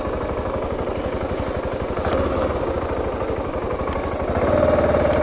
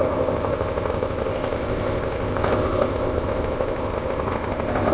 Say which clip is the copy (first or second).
second